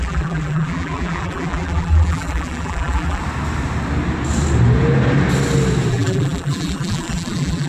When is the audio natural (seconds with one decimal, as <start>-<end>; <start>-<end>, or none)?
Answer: 3.2-5.9